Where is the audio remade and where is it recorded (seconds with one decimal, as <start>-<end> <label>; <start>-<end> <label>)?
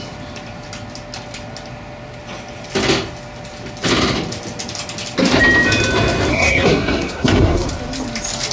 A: 0.0-6.3 recorded; 6.3-7.7 remade; 7.7-8.5 recorded